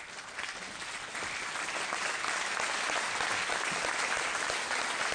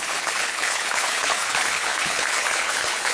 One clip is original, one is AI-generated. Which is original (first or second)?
first